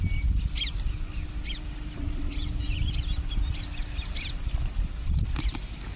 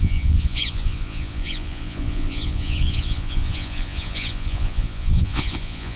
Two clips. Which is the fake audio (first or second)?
second